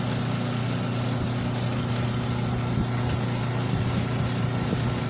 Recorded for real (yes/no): yes